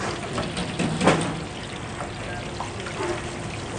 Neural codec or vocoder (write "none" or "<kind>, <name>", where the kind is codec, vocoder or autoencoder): none